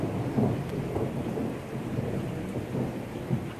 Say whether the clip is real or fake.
real